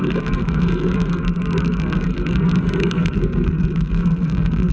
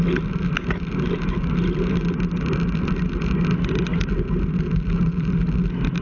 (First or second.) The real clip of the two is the second